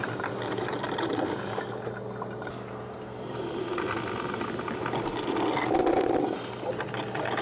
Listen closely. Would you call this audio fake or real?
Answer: real